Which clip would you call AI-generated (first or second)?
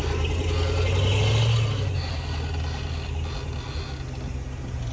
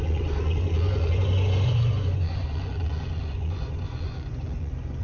second